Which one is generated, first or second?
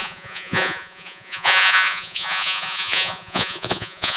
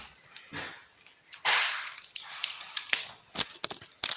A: first